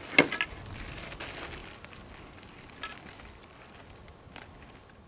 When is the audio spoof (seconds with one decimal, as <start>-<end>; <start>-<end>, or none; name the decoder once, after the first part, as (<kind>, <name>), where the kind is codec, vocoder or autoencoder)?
none